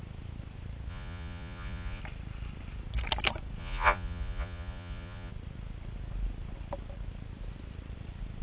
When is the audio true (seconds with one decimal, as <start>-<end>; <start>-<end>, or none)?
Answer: 0.0-0.9; 2.0-3.6; 5.3-8.4